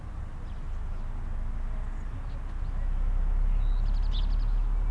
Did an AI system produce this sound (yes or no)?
no